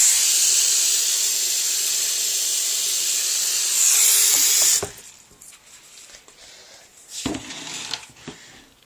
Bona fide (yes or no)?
yes